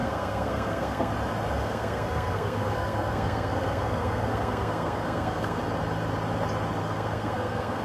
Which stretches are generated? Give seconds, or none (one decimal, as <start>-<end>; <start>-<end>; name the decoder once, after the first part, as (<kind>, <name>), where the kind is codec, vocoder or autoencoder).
0.0-1.1 (codec, SNAC); 1.6-5.6; 6.8-7.8